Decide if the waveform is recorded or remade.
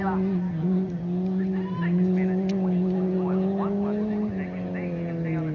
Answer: recorded